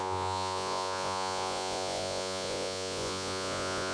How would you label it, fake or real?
fake